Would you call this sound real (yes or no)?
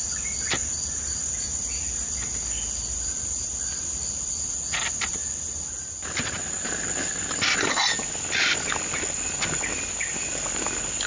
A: yes